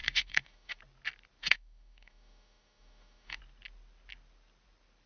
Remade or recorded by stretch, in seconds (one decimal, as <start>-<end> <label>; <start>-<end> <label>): 0.0-0.8 remade; 0.8-1.4 recorded; 1.4-3.4 remade; 3.4-5.1 recorded